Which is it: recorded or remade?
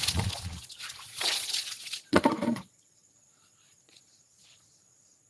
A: remade